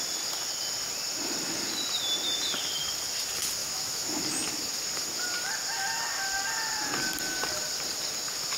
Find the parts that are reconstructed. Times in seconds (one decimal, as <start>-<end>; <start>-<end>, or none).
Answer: 3.6-4.2